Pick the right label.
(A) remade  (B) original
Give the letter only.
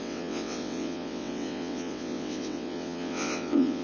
A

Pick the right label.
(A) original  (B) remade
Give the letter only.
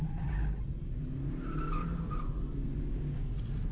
A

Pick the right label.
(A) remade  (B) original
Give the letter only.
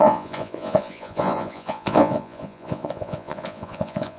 A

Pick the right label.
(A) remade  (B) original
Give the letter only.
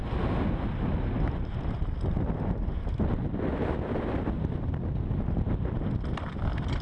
B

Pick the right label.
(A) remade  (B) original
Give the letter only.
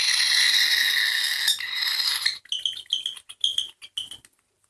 B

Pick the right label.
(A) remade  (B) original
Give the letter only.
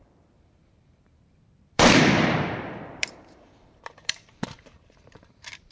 A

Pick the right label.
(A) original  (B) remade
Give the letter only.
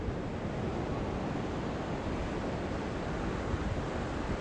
A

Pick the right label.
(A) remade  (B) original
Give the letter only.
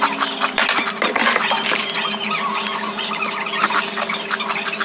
B